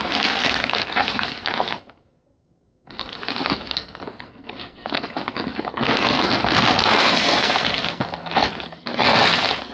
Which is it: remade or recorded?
remade